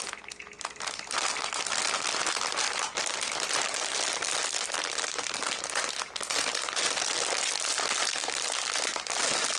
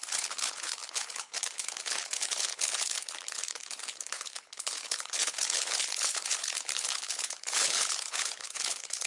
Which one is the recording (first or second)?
first